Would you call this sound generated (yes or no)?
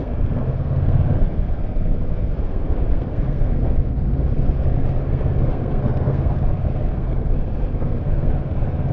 yes